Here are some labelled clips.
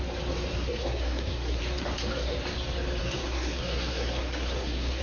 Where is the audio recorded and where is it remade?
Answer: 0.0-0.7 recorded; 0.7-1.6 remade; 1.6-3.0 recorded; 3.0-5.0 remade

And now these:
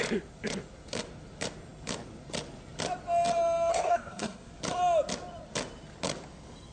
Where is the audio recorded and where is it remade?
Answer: 0.0-3.7 recorded; 3.7-4.5 remade; 4.5-6.7 recorded

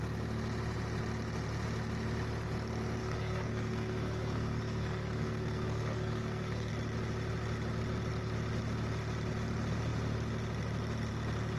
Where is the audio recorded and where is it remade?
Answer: 0.0-3.0 recorded; 3.0-6.7 remade; 6.7-11.6 recorded